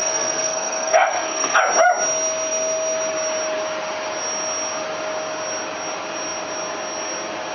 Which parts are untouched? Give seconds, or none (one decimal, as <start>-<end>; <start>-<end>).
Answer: 1.6-7.5